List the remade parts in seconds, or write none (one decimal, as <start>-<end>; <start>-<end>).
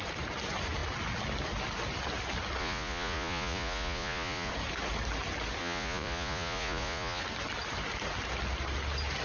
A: 2.6-4.5; 5.6-7.2